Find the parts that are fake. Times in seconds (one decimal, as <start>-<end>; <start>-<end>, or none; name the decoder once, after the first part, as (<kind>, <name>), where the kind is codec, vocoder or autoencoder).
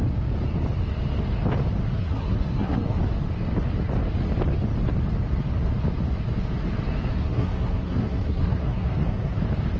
2.0-3.0 (codec, SNAC); 7.1-9.4